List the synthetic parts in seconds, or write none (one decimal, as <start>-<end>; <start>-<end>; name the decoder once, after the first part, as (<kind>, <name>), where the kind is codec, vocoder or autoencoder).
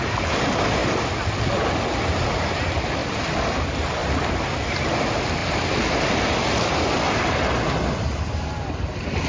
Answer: 0.8-1.5 (vocoder, BigVGAN v2); 3.0-3.6; 4.0-4.7